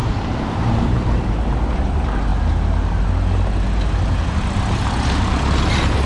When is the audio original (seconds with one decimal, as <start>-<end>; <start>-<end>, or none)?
1.3-6.1